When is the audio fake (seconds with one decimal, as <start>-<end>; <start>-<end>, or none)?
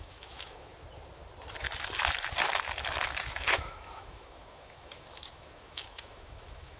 0.0-0.7; 3.3-6.8